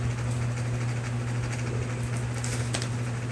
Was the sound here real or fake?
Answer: real